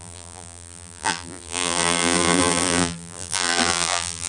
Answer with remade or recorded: remade